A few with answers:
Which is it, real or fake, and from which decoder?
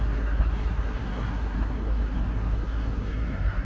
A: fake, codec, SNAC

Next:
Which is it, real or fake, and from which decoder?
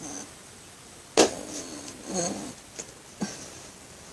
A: real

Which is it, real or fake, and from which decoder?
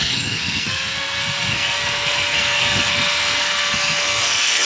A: fake, codec, SNAC